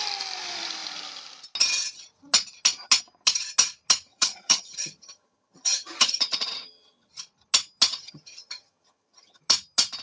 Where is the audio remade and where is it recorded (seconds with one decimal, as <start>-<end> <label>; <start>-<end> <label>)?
0.0-4.1 recorded; 4.1-7.1 remade; 7.1-7.9 recorded; 7.9-9.4 remade; 9.4-10.0 recorded